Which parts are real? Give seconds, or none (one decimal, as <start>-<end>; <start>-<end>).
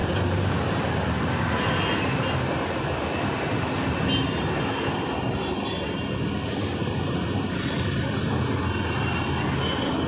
0.6-6.8; 8.0-10.1